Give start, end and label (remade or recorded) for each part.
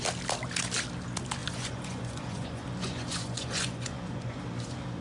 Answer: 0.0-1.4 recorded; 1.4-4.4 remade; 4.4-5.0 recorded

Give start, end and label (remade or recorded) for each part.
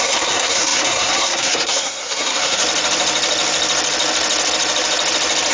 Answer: 0.0-2.6 remade; 2.6-5.5 recorded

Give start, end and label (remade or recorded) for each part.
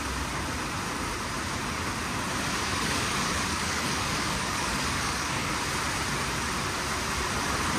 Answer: 0.0-2.7 recorded; 2.7-5.5 remade; 5.5-7.8 recorded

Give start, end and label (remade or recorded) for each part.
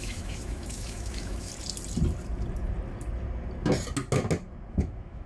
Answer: 0.0-1.5 remade; 1.5-4.7 recorded; 4.7-5.3 remade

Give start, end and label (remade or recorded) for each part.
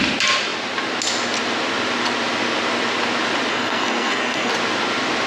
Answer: 0.0-3.5 recorded; 3.5-4.5 remade; 4.5-5.3 recorded